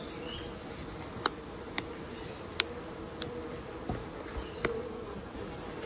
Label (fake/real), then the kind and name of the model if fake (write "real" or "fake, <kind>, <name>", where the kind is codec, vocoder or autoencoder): real